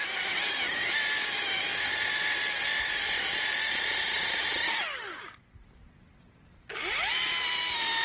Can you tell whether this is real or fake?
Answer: real